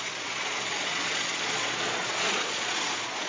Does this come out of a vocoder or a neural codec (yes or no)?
yes